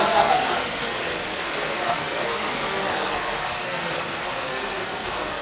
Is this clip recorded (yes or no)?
no